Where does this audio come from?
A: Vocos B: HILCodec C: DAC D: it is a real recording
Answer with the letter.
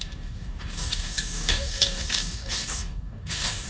C